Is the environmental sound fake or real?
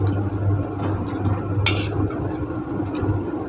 real